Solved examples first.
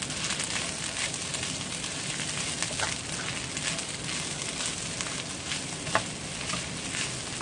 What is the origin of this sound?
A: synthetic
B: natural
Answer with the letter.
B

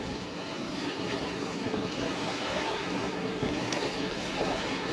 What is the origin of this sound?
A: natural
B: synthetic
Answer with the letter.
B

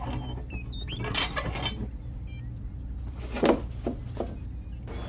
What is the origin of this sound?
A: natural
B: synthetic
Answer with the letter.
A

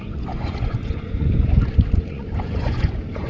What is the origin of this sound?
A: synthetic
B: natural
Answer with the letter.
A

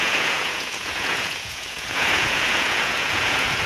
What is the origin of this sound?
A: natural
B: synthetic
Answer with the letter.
B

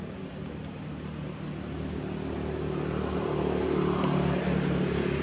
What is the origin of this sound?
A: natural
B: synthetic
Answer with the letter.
A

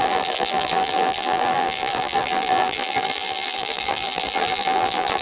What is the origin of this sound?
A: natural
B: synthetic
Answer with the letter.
B